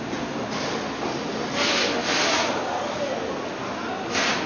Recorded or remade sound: recorded